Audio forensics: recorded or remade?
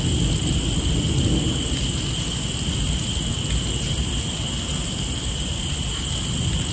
recorded